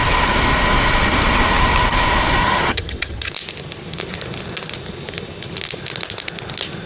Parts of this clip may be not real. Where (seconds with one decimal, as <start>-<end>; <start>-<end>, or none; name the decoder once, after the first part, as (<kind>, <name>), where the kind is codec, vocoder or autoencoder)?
2.4-3.3 (vocoder, HiFi-GAN)